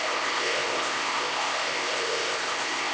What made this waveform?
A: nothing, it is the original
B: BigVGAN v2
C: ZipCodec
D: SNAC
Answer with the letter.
C